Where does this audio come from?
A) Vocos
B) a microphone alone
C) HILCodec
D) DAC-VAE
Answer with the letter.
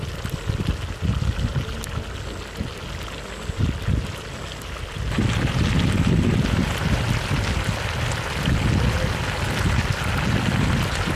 B